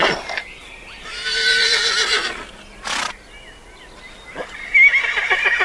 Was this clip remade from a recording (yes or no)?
no